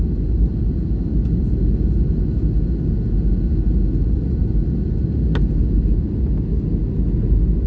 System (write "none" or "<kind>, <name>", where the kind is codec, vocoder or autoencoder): none